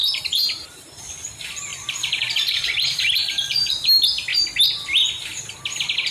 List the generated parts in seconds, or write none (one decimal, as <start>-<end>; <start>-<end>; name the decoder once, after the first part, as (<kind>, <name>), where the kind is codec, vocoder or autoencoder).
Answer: 0.0-0.9 (vocoder, BigVGAN v2); 1.7-3.7